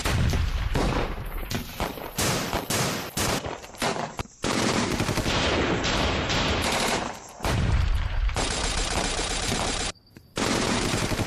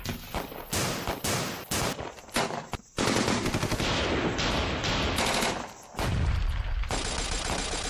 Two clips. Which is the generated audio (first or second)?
first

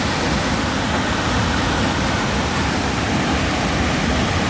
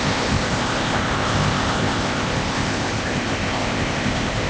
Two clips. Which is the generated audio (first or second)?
second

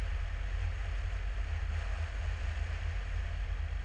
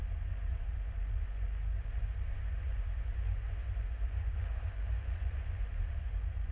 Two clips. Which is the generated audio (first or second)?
second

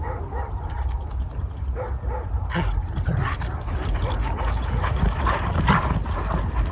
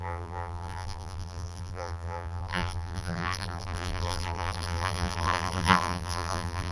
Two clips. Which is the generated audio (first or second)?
second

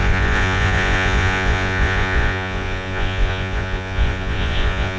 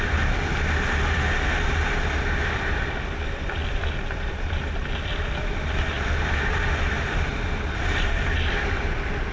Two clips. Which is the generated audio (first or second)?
first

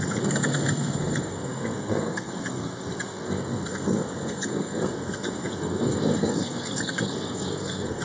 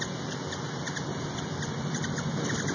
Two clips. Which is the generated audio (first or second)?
first